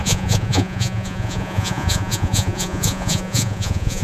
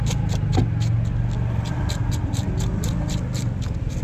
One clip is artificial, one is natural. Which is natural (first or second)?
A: second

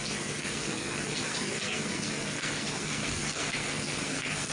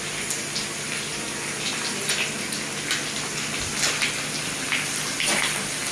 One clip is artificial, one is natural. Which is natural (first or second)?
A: second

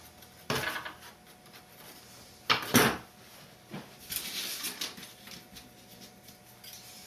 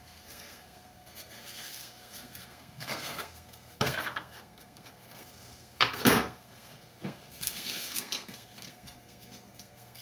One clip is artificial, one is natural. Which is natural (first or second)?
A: first